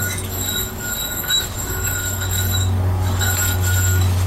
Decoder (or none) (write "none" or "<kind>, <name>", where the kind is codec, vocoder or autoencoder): codec, DAC